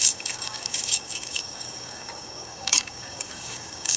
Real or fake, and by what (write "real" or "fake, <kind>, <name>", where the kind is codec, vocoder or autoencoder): fake, codec, DAC